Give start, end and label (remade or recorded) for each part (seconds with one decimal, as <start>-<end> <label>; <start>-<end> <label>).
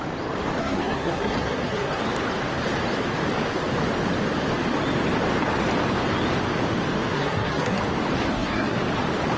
0.0-0.6 recorded; 0.6-2.0 remade; 2.0-7.1 recorded; 7.1-7.8 remade; 7.8-8.3 recorded; 8.3-8.8 remade; 8.8-9.4 recorded